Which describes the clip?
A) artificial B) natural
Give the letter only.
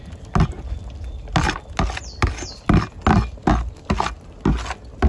B